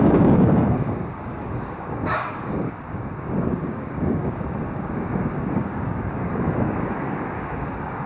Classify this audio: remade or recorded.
remade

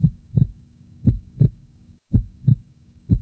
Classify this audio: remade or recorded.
remade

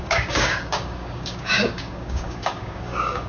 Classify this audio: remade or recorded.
remade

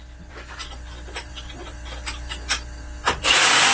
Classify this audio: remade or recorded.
recorded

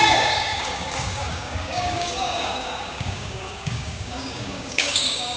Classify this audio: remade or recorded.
remade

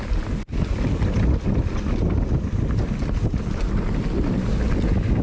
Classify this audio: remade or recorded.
recorded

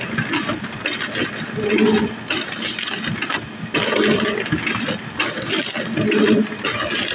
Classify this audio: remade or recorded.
recorded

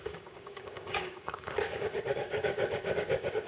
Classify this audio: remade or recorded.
remade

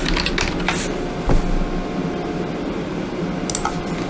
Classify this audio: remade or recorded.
recorded